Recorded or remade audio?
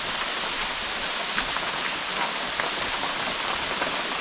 recorded